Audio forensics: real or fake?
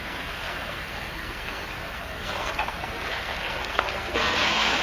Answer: fake